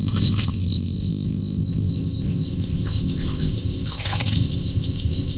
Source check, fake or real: fake